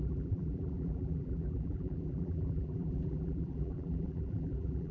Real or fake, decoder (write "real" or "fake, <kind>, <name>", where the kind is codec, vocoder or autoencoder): fake, vocoder, BigVGAN v2